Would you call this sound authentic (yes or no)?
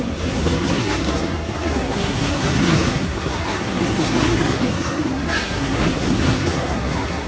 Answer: no